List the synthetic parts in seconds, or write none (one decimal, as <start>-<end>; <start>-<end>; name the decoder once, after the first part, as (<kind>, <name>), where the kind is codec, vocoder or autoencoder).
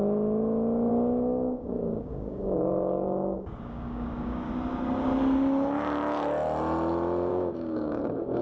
0.9-4.5 (codec, DAC); 7.3-8.0